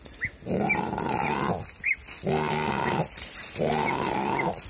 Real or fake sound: real